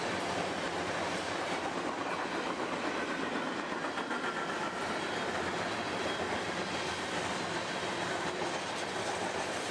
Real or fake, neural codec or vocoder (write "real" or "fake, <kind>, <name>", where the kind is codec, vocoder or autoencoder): real